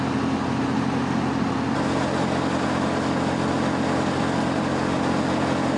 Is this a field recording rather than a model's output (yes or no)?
yes